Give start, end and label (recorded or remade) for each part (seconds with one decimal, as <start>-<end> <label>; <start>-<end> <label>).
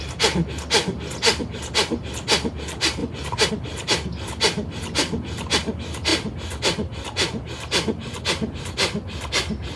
0.0-9.8 recorded